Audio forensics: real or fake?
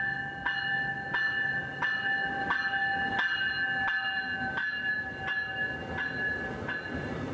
real